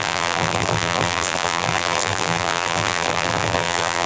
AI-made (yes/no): yes